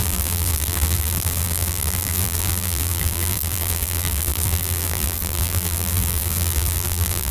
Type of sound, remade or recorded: remade